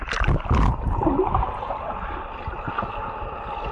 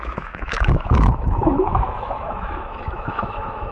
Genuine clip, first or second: first